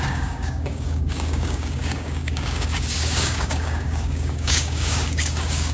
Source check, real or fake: fake